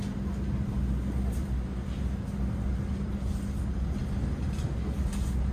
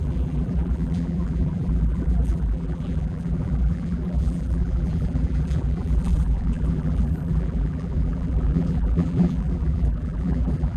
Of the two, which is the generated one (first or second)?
second